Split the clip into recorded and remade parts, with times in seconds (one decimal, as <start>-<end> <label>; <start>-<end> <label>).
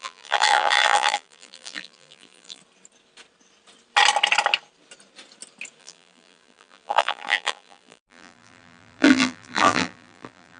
0.0-2.6 remade; 2.6-5.8 recorded; 5.8-10.6 remade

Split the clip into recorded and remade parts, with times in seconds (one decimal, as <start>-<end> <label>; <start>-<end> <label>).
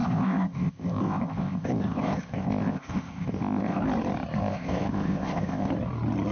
0.0-3.8 remade; 3.8-4.4 recorded; 4.4-5.7 remade; 5.7-6.3 recorded